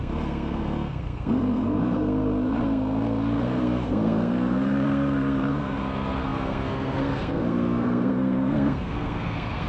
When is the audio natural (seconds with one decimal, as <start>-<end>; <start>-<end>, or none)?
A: none